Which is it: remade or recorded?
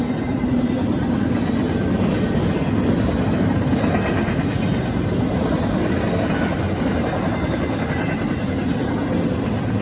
recorded